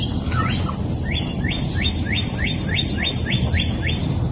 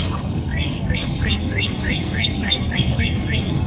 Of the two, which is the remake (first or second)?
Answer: second